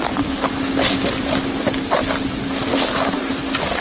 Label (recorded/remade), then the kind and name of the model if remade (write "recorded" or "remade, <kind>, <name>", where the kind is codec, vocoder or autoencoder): recorded